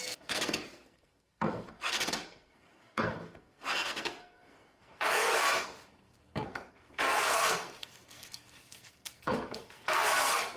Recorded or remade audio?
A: remade